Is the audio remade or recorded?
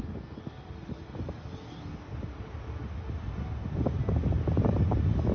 recorded